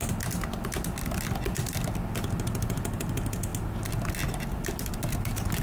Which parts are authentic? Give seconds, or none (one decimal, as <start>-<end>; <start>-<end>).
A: 0.0-5.6